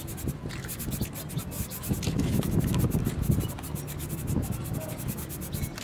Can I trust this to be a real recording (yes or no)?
yes